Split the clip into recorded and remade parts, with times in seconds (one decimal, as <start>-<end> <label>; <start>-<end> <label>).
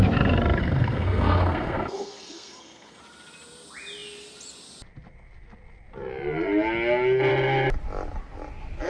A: 0.0-0.6 recorded; 0.6-3.0 remade; 3.0-8.9 recorded